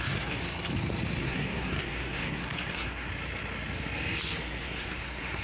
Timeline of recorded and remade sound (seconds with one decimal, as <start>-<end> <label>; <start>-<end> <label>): 0.0-0.4 remade; 0.4-1.2 recorded; 1.2-3.1 remade; 3.1-4.4 recorded; 4.4-5.4 remade